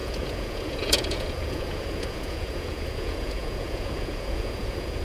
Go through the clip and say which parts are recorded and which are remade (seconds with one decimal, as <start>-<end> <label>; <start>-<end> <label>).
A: 0.0-5.0 remade